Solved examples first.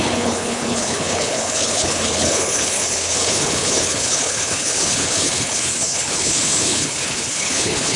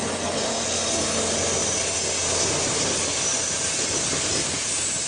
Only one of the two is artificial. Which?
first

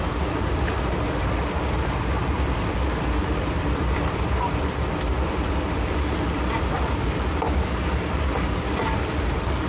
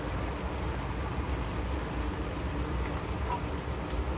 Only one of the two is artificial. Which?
first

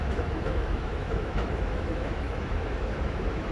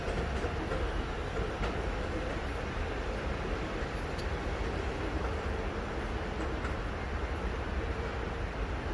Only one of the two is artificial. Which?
first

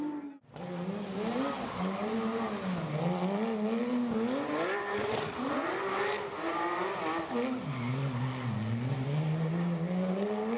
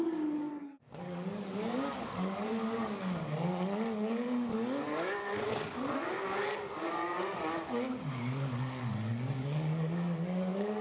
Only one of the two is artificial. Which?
second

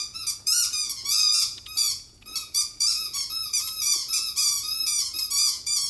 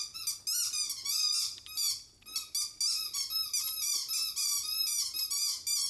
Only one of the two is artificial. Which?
first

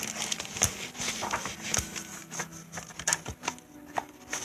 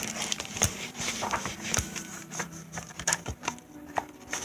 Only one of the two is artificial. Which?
second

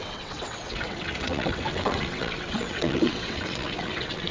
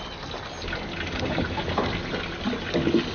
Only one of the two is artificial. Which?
first